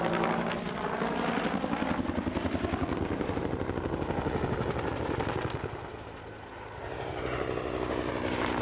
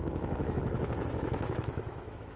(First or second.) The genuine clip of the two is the first